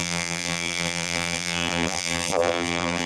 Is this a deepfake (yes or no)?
yes